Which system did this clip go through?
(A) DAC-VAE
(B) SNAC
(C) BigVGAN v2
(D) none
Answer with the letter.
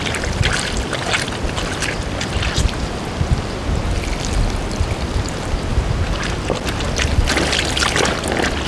D